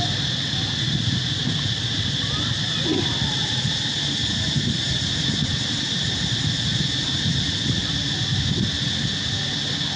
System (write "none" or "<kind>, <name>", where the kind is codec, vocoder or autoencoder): none